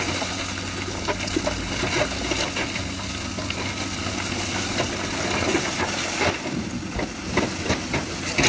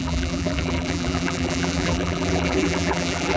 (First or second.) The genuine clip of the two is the first